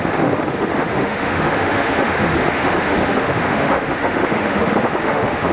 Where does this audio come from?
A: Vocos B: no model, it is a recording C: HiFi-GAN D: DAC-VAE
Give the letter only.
D